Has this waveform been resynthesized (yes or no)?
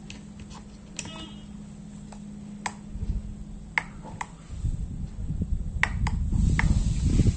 no